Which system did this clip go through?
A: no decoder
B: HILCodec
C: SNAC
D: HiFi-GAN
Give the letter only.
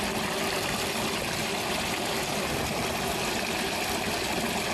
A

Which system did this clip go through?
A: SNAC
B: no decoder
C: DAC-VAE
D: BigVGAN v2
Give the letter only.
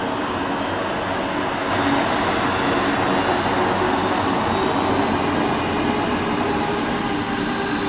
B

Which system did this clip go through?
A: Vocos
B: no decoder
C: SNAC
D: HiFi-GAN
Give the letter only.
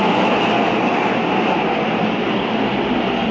B